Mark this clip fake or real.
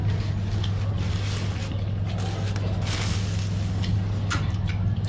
real